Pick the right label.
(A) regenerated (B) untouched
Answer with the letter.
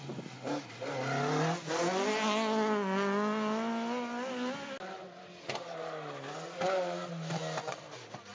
B